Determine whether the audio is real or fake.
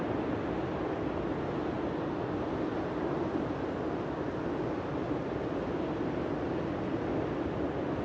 real